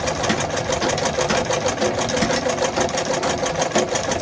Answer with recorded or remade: recorded